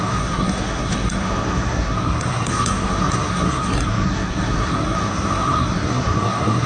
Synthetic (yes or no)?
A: yes